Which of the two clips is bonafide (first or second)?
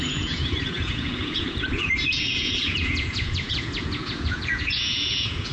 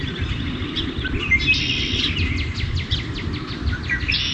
second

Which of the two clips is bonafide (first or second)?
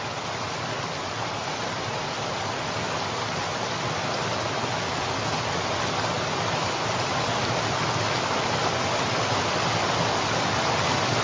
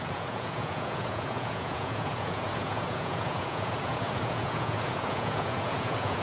first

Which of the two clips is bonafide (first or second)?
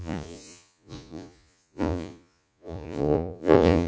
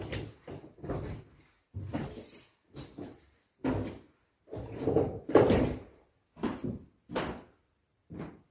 second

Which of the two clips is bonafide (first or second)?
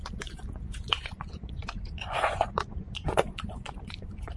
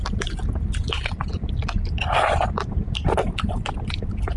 second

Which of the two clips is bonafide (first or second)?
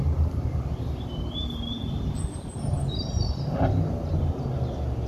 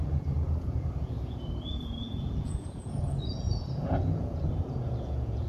first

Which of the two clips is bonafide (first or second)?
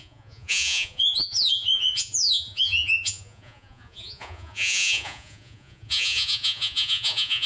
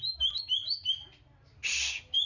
second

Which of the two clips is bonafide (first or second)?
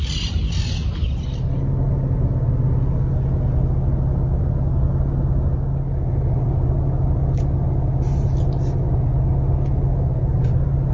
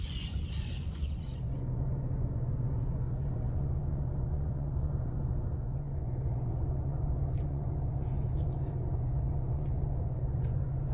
first